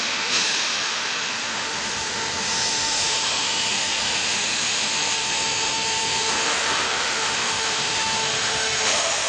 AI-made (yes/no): yes